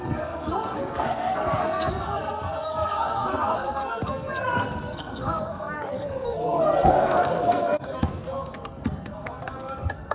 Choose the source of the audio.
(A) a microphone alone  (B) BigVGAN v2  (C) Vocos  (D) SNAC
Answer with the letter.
D